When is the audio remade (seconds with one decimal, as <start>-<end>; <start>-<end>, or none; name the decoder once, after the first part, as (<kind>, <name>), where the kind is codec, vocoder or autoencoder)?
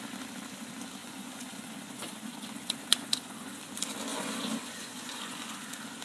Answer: 1.0-3.6 (vocoder, Vocos); 4.1-6.0